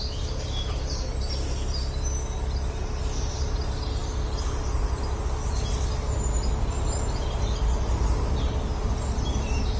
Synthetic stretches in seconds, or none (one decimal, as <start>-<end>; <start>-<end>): none